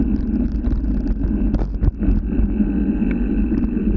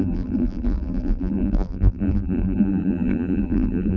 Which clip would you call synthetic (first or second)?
second